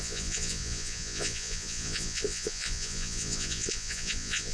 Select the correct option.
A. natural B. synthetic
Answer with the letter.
B